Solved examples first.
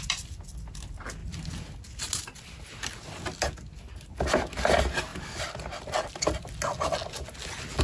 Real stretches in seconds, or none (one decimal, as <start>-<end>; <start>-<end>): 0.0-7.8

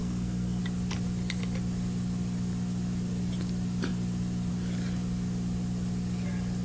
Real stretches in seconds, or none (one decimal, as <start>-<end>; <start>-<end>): 0.6-6.6

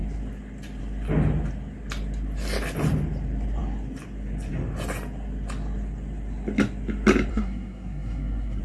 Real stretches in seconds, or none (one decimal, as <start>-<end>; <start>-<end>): 0.0-7.3

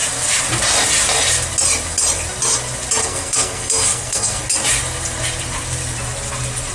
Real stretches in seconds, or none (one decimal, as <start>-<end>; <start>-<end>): 0.0-3.0; 4.4-6.7

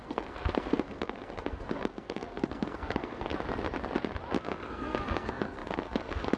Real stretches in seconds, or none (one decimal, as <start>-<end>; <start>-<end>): 3.3-4.4

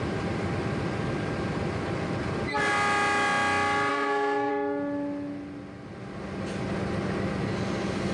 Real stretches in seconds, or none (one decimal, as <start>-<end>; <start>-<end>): 0.0-3.9; 4.5-8.1

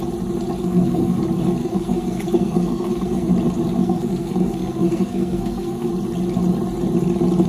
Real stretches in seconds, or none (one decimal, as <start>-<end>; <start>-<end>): 0.0-0.6; 1.2-1.6; 3.3-3.8; 5.9-7.5

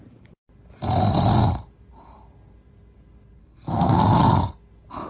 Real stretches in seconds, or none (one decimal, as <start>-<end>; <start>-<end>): 0.0-3.4; 4.0-5.1